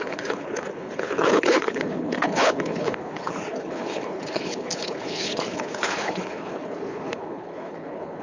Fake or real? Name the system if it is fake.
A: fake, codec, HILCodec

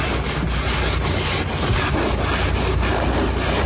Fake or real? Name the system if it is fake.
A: real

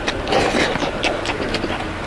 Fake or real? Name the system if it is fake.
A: fake, vocoder, BigVGAN v2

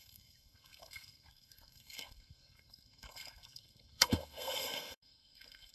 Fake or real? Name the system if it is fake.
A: fake, codec, SNAC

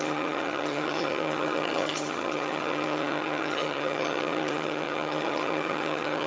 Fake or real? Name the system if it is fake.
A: fake, vocoder, HiFi-GAN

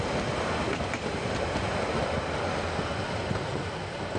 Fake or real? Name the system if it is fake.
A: real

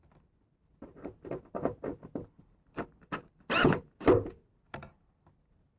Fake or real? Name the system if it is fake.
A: real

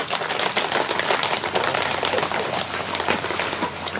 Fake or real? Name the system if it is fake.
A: real